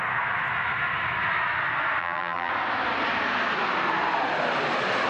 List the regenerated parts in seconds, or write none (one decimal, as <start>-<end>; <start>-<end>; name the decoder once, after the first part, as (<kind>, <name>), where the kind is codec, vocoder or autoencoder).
2.0-2.5 (vocoder, BigVGAN v2)